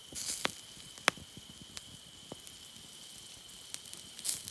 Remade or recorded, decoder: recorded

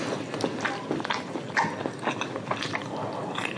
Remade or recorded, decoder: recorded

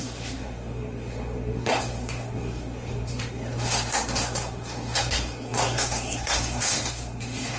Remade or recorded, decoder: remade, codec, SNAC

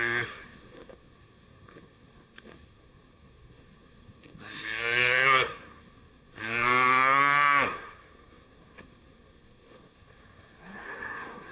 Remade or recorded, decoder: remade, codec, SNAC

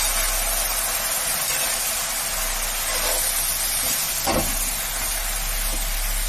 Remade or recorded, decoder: recorded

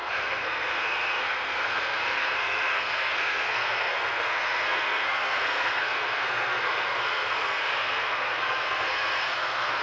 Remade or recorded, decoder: remade, codec, SNAC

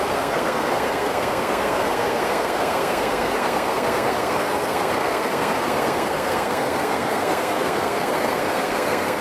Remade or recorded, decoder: remade, codec, SNAC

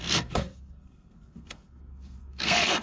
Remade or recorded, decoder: remade, codec, SNAC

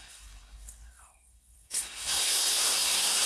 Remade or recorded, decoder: remade, codec, SNAC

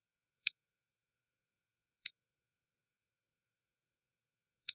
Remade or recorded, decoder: remade, codec, SNAC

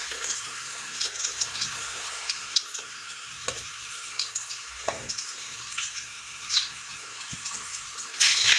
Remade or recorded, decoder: remade, codec, SNAC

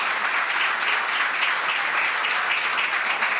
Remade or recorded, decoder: recorded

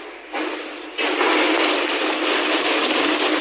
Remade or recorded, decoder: recorded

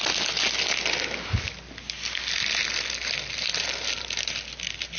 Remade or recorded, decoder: recorded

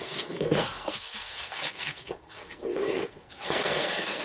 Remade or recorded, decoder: remade, codec, SNAC